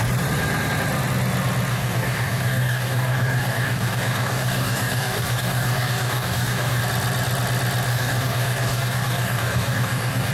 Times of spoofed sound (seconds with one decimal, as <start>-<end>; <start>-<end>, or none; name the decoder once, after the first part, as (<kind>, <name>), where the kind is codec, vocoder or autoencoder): 1.7-6.8 (codec, DAC); 7.9-10.3